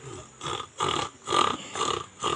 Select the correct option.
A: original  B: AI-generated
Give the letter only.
A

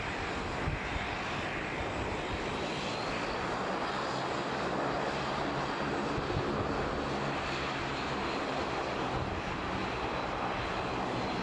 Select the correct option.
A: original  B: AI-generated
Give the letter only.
A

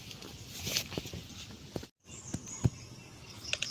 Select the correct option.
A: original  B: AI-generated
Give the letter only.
A